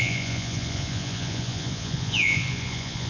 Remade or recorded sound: remade